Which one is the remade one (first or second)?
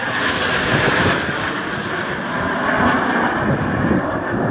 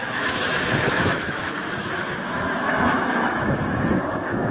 second